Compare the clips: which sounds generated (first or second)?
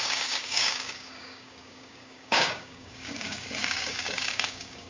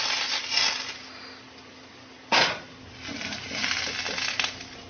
first